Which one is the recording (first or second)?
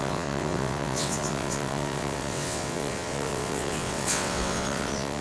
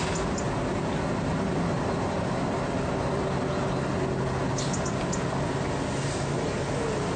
second